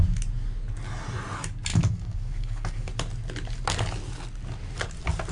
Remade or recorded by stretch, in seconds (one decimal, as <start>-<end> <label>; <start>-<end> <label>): 0.0-1.7 recorded; 1.7-2.9 remade; 2.9-5.3 recorded